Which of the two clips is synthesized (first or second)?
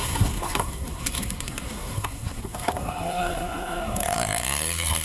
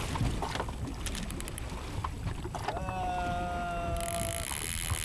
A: first